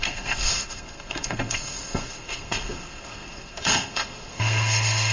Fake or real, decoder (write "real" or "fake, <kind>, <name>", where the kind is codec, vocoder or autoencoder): fake, codec, SNAC